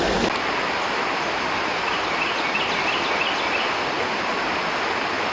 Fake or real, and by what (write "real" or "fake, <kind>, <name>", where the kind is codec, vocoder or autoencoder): real